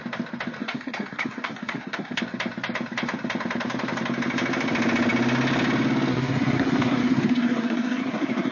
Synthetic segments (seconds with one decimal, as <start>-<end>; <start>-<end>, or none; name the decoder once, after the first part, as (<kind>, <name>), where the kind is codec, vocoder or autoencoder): 0.6-2.2 (codec, SNAC); 6.1-8.5